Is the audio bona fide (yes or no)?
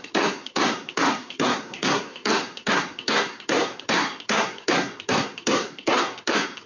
no